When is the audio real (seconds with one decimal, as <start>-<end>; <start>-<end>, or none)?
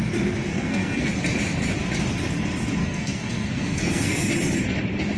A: 0.0-0.5; 1.1-2.8; 4.3-5.2